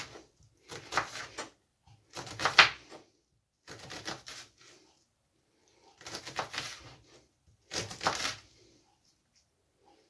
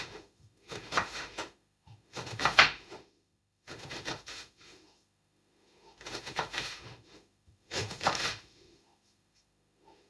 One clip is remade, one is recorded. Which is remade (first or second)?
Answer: second